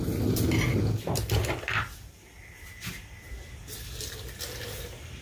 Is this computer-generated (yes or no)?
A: no